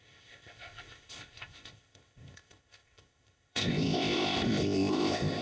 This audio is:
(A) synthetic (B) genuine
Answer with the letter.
A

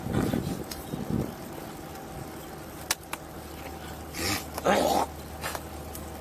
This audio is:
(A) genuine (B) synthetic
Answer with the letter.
A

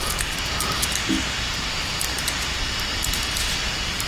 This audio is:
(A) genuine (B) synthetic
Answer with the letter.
A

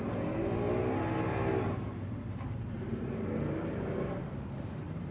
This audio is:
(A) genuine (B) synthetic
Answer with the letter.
A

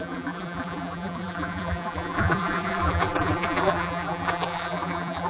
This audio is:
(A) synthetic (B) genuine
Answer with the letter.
A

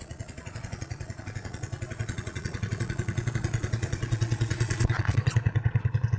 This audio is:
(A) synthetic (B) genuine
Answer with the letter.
A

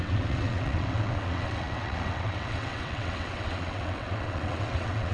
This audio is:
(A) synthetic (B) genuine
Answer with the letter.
A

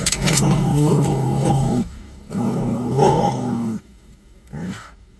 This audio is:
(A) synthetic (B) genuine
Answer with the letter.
A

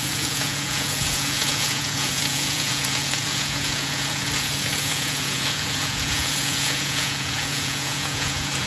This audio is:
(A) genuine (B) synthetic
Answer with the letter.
B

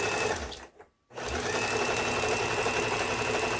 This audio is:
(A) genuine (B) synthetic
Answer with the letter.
A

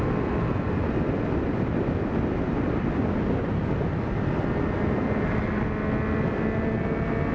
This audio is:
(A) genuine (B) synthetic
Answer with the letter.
A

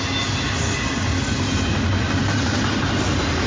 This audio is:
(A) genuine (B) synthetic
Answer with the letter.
A